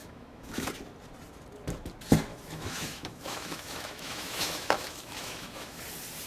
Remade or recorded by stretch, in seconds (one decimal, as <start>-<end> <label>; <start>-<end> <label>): 0.0-0.7 remade; 0.7-2.3 recorded; 2.3-5.8 remade; 5.8-6.3 recorded